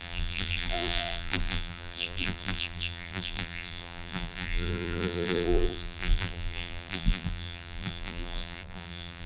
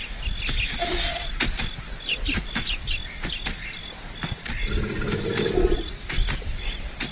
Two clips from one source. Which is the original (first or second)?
second